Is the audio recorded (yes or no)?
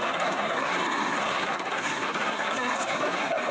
no